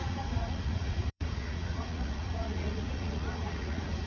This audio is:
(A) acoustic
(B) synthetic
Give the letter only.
B